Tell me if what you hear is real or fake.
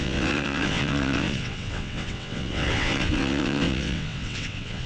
fake